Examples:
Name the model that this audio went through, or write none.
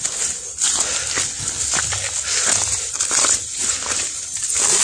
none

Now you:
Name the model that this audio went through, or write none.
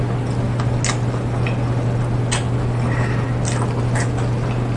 none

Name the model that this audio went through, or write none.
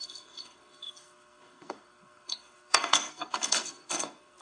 codec, SNAC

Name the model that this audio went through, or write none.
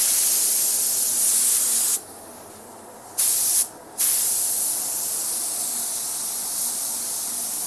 none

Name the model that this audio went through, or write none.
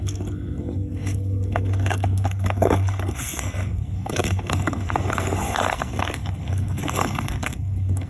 codec, SNAC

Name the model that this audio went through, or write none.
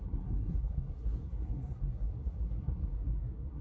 codec, SNAC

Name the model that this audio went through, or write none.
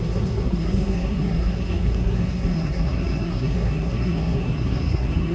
codec, SNAC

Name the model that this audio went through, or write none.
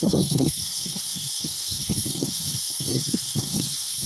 codec, SNAC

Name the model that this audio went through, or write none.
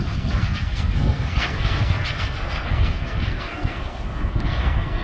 codec, SNAC